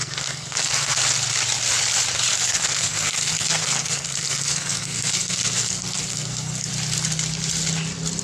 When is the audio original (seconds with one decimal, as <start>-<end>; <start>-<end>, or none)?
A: 1.0-2.3; 6.7-8.2